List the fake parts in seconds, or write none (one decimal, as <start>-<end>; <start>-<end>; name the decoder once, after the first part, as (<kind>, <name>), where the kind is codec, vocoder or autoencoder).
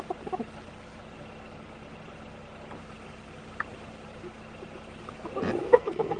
5.6-6.2 (codec, SNAC)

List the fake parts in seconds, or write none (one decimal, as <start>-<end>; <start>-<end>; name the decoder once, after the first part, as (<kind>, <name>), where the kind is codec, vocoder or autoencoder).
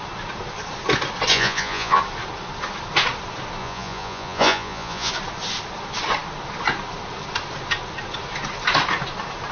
1.3-2.0 (vocoder, Vocos); 3.6-5.1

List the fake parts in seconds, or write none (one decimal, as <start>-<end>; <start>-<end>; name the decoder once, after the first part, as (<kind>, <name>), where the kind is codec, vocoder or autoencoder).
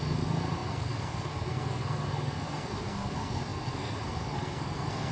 0.0-5.1 (codec, SNAC)